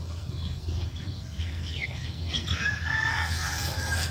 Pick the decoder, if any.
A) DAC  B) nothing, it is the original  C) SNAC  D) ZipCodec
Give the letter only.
C